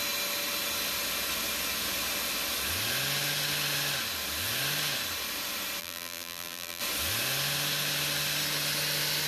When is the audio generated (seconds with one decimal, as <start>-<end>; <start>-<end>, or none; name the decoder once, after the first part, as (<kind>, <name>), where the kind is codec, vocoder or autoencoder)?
5.8-6.8 (vocoder, BigVGAN v2)

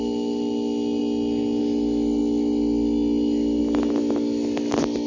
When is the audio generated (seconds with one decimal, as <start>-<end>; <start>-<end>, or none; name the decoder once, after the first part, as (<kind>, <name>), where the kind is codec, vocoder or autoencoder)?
none